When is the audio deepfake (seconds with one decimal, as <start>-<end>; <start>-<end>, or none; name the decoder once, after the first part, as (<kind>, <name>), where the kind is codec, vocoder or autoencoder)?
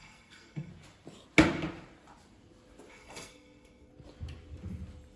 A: 0.0-0.7 (codec, SNAC); 2.9-3.9